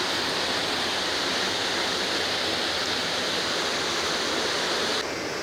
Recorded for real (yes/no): yes